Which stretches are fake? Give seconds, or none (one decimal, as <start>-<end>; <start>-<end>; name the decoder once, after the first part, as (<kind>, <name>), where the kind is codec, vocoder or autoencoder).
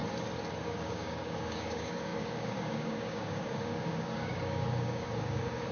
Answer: 0.6-5.7 (codec, DAC)